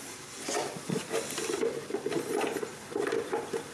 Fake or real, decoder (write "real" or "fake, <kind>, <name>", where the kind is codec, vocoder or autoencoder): real